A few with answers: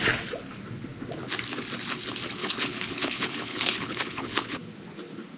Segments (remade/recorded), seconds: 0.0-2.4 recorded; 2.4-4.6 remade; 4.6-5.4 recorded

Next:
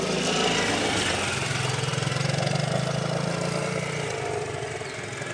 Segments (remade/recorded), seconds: 0.0-5.3 recorded

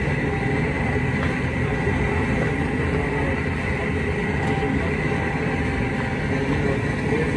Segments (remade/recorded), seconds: 0.0-7.4 recorded

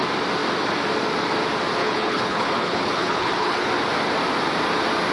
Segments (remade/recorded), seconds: 0.0-1.8 recorded; 1.8-3.7 remade; 3.7-5.1 recorded

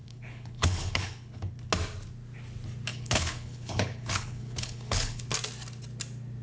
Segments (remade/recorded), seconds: 0.0-1.5 remade; 1.5-2.9 recorded; 2.9-5.2 remade; 5.2-6.4 recorded

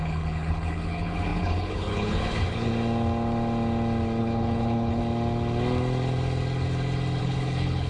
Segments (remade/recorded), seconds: 0.0-2.7 remade; 2.7-4.2 recorded; 4.2-5.0 remade; 5.0-7.2 recorded; 7.2-7.9 remade

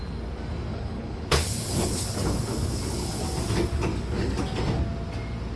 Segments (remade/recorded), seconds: 0.0-0.7 recorded; 0.7-3.2 remade; 3.2-5.6 recorded

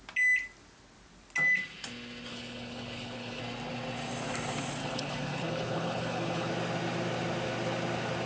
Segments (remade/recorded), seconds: 0.0-2.3 recorded; 2.3-3.4 remade; 3.4-4.8 recorded; 4.8-6.5 remade; 6.5-8.3 recorded